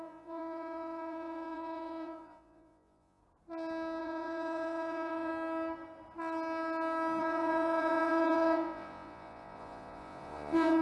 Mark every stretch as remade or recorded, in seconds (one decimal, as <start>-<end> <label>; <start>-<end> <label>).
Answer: 0.0-3.2 remade; 3.2-4.0 recorded; 4.0-5.3 remade; 5.3-7.2 recorded; 7.2-10.8 remade